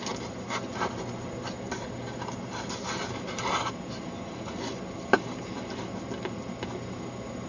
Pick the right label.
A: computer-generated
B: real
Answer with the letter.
B